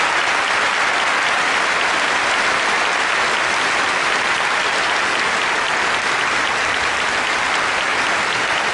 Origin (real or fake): real